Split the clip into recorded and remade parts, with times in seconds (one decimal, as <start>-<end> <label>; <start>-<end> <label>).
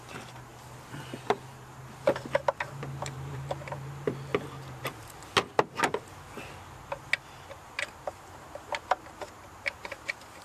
0.0-0.5 remade; 0.5-2.0 recorded; 2.0-4.3 remade; 4.3-8.1 recorded; 8.1-10.4 remade